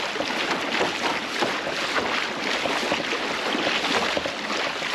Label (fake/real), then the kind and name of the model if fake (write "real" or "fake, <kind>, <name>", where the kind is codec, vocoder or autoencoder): real